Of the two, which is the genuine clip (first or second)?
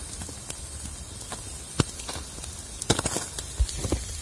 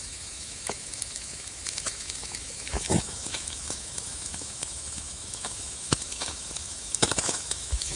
first